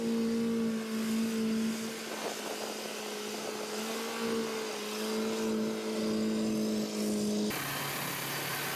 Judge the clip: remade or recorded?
recorded